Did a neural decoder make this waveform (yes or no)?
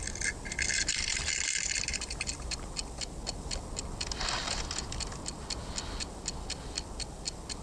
no